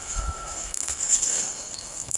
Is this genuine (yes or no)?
no